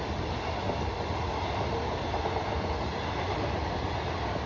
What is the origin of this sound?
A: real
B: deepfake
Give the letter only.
A